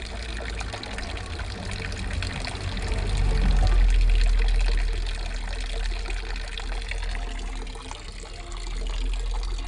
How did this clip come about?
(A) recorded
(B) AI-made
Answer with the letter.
A